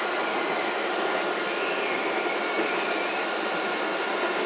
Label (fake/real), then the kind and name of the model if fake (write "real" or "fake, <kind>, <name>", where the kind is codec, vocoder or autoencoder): real